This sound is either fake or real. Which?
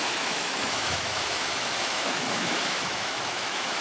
fake